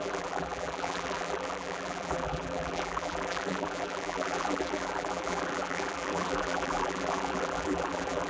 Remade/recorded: remade